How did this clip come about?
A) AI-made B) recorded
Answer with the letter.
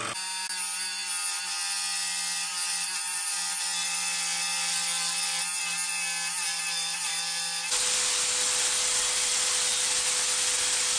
B